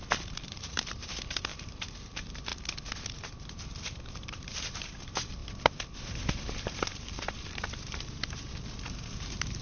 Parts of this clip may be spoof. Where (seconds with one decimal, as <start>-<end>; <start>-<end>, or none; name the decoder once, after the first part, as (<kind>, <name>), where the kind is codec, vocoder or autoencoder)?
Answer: 0.0-2.5 (vocoder, BigVGAN v2); 3.3-5.4; 6.0-9.6